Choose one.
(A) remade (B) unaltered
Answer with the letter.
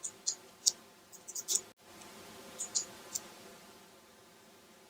B